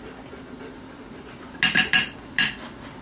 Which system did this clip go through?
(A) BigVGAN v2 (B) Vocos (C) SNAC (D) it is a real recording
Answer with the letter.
D